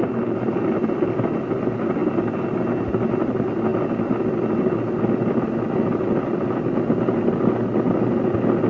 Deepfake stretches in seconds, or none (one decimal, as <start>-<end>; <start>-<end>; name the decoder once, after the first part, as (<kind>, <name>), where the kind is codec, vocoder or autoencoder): none